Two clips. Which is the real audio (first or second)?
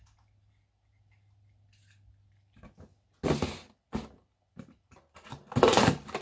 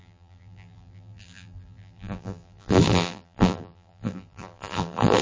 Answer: first